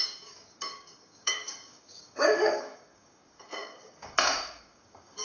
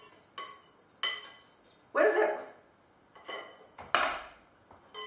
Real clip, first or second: second